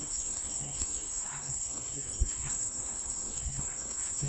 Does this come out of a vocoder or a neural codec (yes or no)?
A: yes